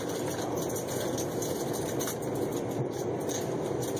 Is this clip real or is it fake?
real